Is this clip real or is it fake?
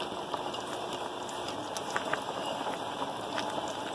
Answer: real